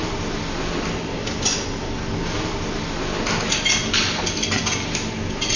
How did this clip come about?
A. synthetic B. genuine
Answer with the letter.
B